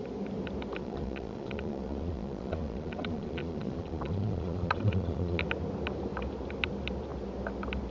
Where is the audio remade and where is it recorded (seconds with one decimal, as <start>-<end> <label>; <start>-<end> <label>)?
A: 0.0-0.8 recorded; 0.8-5.4 remade; 5.4-7.9 recorded